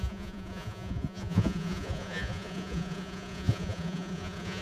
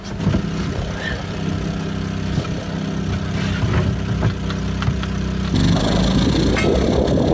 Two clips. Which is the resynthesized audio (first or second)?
first